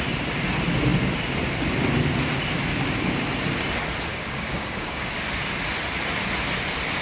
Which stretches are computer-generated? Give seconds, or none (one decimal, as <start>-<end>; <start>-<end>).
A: 4.1-5.2